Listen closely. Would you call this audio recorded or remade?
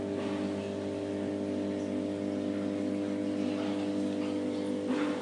recorded